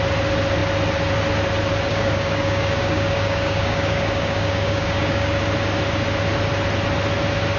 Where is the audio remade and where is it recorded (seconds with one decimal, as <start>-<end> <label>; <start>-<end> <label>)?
0.0-1.9 recorded; 1.9-5.4 remade; 5.4-7.6 recorded